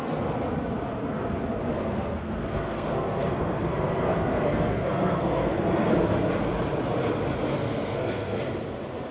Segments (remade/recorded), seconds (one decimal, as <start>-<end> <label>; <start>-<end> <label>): 0.0-1.7 recorded; 1.7-5.9 remade; 5.9-7.5 recorded; 7.5-8.4 remade; 8.4-9.1 recorded